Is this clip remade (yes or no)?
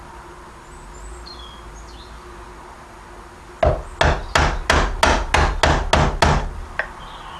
no